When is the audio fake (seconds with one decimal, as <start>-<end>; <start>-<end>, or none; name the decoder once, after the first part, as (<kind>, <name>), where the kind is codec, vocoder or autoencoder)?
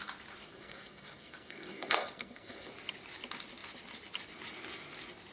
0.5-2.7 (codec, SNAC)